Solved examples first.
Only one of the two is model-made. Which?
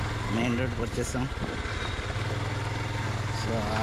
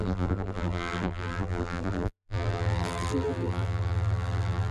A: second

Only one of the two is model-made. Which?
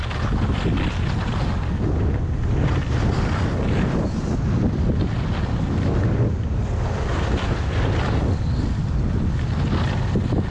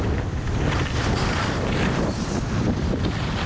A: second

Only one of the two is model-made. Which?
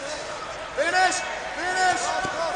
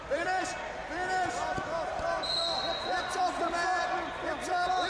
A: second